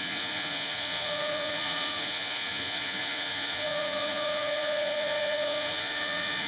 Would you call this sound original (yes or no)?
no